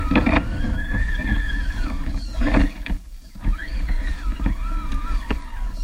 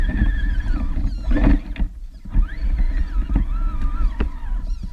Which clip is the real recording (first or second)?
second